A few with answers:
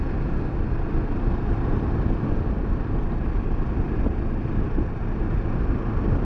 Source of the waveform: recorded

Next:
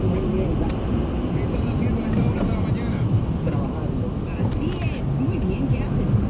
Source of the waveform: recorded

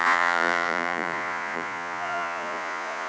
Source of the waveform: remade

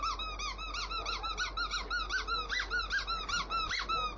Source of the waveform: recorded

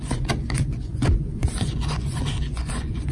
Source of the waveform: remade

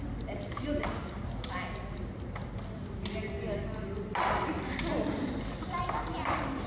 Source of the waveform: recorded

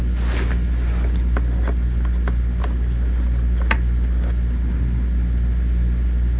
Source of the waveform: recorded